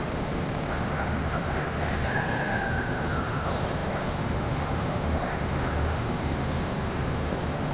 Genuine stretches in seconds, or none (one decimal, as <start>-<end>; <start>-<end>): none